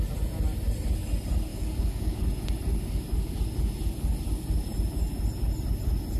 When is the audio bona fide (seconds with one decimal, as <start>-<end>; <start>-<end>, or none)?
0.0-1.5; 2.2-6.2